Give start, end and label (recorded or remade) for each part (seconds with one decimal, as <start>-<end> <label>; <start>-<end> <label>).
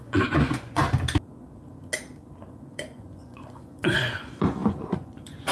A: 0.0-0.8 remade; 0.8-2.5 recorded; 2.5-5.5 remade